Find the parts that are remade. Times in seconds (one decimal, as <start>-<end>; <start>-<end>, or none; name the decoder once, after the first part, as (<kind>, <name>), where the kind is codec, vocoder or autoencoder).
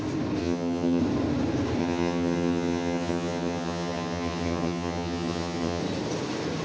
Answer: 0.4-1.0 (vocoder, HiFi-GAN); 1.8-5.8